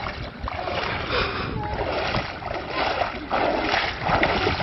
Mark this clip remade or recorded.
recorded